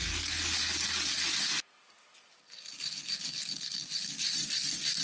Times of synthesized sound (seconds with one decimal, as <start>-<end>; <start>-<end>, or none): none